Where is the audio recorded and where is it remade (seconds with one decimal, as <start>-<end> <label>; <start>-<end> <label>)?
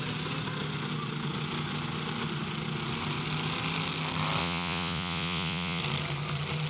0.0-4.4 recorded; 4.4-5.8 remade; 5.8-6.7 recorded